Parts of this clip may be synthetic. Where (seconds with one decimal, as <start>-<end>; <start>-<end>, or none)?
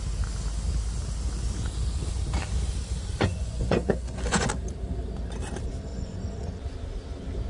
3.3-4.5; 5.9-6.6